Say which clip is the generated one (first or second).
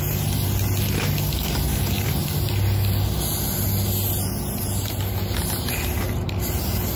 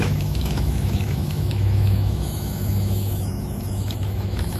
second